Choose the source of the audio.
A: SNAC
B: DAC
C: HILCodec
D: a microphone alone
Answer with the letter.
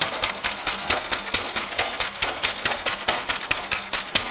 A